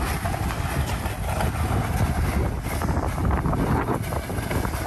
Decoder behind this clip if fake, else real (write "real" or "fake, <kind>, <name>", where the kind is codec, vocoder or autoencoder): real